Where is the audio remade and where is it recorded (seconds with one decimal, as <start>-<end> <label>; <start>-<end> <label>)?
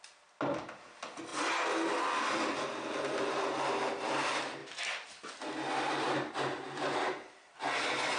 0.0-8.2 recorded